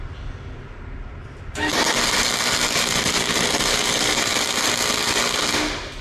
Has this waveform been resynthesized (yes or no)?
no